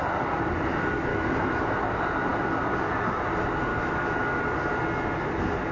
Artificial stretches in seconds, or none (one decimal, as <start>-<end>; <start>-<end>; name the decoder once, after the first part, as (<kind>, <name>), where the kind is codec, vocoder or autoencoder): 1.1-1.6 (autoencoder, DAC-VAE); 3.7-4.4